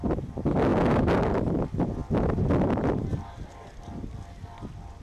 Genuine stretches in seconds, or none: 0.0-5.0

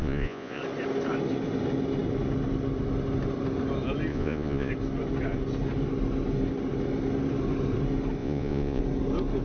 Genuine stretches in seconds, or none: 0.6-4.1; 4.7-8.2; 8.8-9.4

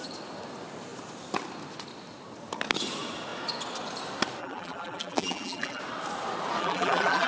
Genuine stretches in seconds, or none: 0.0-4.4; 5.8-6.6

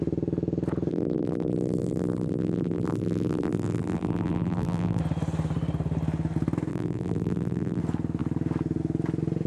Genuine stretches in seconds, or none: 0.0-0.9; 5.0-6.7; 7.8-9.5

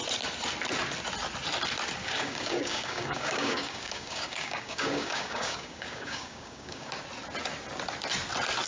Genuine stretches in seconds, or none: 0.0-2.0; 6.9-8.7